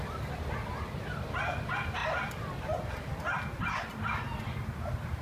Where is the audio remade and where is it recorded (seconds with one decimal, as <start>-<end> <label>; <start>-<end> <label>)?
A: 0.0-5.2 recorded